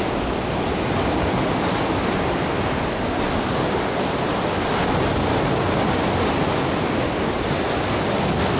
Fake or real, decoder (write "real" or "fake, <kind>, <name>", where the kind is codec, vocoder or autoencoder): real